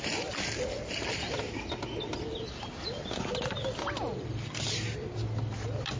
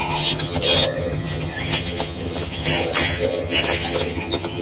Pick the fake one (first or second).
second